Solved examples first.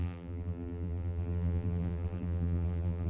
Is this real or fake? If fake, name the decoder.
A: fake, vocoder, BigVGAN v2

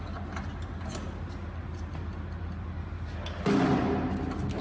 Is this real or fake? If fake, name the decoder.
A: real